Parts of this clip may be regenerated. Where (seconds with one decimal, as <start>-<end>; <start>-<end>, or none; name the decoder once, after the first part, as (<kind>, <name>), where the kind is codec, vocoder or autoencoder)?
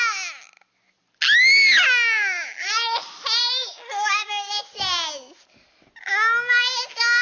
3.4-4.6 (codec, DAC)